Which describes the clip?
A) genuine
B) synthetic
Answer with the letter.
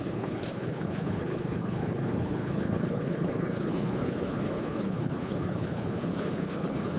B